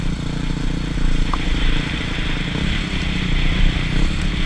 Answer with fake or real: fake